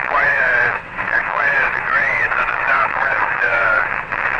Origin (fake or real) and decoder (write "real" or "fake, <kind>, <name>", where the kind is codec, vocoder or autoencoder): fake, vocoder, WaveNeXt